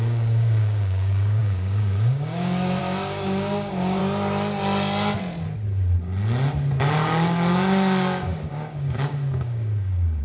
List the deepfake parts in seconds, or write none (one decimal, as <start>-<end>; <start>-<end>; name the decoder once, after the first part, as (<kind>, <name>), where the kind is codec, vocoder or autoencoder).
0.0-4.0 (codec, DAC); 6.8-10.2